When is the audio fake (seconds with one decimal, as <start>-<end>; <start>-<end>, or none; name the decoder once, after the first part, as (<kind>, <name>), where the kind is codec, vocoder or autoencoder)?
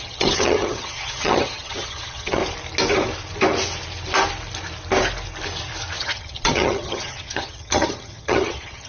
0.0-2.4 (vocoder, HiFi-GAN); 6.0-8.9